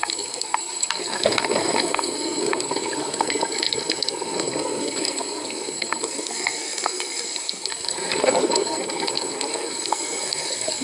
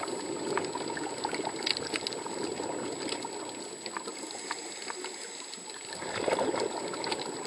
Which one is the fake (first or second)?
first